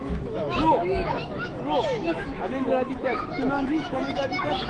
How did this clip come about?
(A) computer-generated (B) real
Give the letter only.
A